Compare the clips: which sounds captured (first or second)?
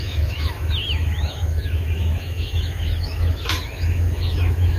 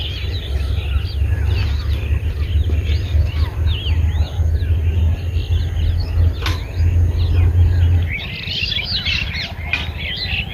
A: second